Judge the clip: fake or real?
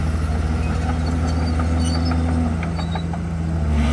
real